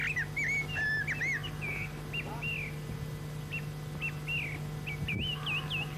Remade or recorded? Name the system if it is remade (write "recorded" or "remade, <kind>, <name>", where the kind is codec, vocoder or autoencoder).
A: recorded